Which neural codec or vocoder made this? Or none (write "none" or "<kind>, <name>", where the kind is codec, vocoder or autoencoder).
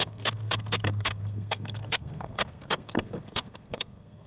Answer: codec, SNAC